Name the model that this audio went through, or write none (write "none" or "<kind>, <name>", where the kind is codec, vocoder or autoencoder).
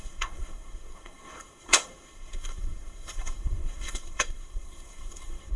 codec, SNAC